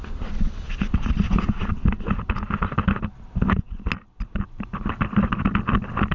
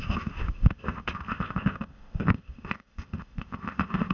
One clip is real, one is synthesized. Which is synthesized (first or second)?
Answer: second